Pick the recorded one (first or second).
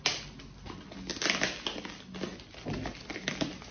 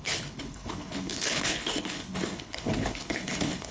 first